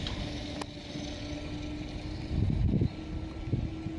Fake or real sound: real